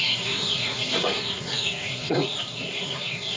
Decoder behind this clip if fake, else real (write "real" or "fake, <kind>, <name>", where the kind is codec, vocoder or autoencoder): fake, codec, SNAC